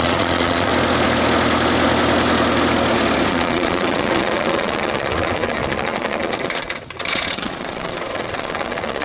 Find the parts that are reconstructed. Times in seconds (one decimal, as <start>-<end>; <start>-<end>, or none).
0.0-0.7; 3.3-9.0